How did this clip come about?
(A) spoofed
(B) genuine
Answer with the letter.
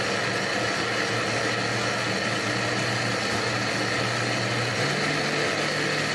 B